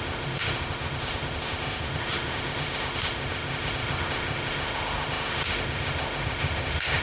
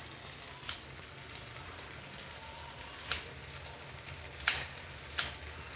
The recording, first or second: second